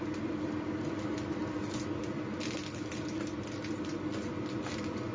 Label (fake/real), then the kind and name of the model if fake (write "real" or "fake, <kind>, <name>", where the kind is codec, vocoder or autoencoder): real